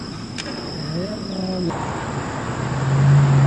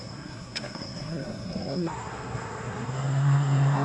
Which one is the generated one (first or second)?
second